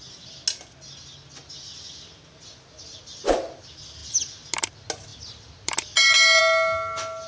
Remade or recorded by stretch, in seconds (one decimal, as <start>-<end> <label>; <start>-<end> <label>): 0.0-7.3 recorded